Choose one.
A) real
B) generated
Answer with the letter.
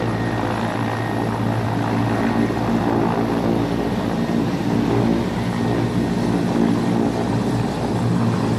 A